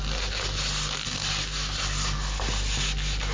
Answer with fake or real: real